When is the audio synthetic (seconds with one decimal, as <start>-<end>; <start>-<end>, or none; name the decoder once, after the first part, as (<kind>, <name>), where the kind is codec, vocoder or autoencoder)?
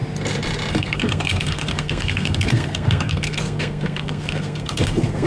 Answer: 0.7-5.3 (codec, SNAC)